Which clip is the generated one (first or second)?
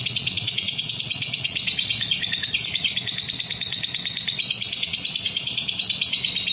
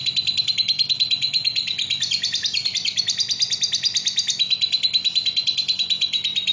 first